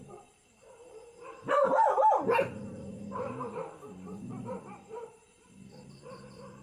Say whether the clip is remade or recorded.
remade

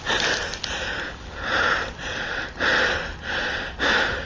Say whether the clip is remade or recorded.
recorded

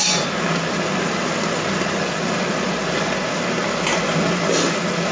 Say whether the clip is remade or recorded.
recorded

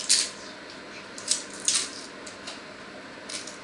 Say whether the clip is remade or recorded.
recorded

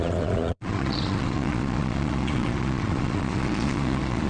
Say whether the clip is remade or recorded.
remade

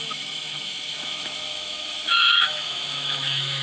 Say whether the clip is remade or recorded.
remade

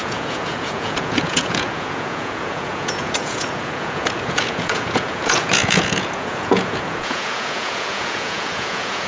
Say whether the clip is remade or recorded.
remade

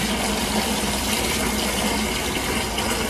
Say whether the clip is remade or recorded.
recorded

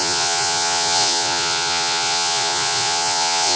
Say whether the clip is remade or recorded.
remade